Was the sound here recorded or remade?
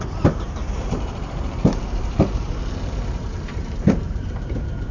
remade